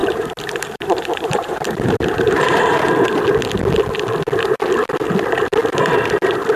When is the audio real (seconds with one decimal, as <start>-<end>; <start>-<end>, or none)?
2.9-6.6